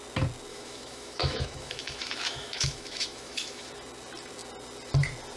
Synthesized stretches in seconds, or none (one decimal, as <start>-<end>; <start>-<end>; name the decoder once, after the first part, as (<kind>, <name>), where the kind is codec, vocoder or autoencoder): 0.5-3.7 (autoencoder, DAC-VAE)